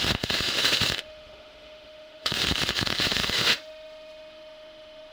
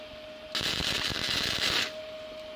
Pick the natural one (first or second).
second